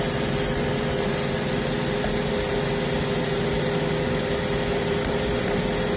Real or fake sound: real